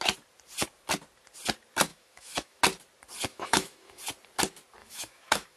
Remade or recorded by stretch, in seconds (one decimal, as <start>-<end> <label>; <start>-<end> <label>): 0.0-1.9 recorded; 1.9-2.6 remade; 2.6-3.3 recorded; 3.3-4.0 remade; 4.0-4.8 recorded; 4.8-5.6 remade